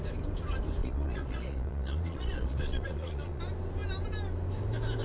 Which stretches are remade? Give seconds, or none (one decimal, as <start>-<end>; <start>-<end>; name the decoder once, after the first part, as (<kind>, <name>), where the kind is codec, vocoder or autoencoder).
0.8-3.4 (vocoder, Vocos)